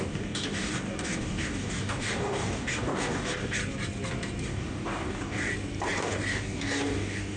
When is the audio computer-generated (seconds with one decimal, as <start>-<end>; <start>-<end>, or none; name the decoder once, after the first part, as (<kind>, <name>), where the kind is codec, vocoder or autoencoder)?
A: 0.0-3.6 (codec, DAC); 4.4-5.5; 6.0-7.4